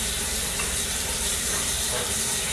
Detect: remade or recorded remade